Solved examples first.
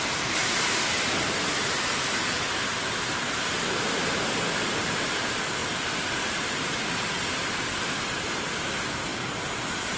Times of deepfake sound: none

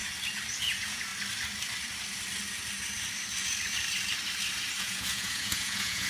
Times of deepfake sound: 0.6-1.1 (vocoder, Vocos); 4.8-6.1

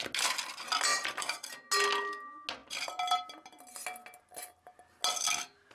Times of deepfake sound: 0.9-1.5 (vocoder, BigVGAN v2)

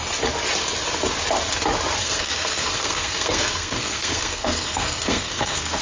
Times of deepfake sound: 2.0-5.8 (codec, SNAC)

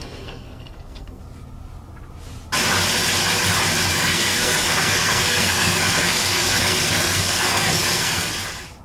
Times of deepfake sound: 0.0-1.2 (codec, SNAC); 3.9-8.3

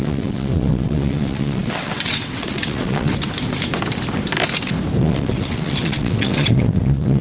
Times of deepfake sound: 0.0-3.1 (vocoder, WaveNeXt); 5.0-7.2

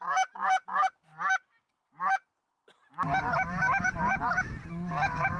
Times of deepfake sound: none

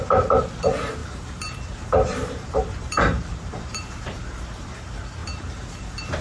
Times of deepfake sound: 1.0-4.7 (vocoder, BigVGAN v2); 5.2-6.2